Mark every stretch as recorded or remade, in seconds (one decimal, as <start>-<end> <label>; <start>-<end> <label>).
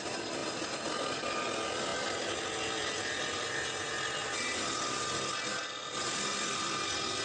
0.0-7.2 recorded